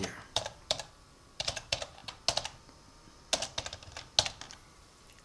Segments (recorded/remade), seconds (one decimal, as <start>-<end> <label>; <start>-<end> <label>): 0.0-2.0 remade; 2.0-4.8 recorded; 4.8-5.2 remade